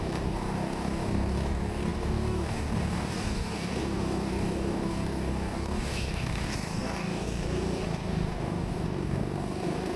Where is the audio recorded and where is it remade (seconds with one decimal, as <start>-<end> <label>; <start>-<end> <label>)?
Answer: 0.0-10.0 remade